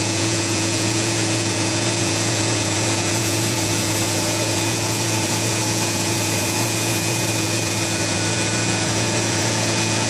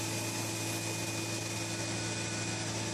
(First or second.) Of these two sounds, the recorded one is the second